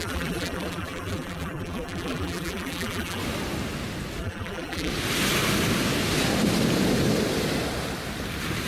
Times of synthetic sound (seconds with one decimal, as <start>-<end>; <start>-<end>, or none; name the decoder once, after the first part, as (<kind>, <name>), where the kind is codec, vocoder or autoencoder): 0.0-3.2 (vocoder, BigVGAN v2); 4.2-4.9